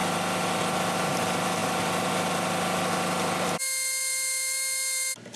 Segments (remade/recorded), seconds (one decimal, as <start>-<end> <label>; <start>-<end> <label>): 0.0-5.4 recorded